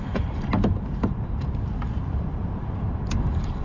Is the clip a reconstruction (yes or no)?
yes